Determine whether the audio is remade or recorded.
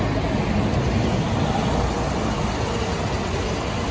recorded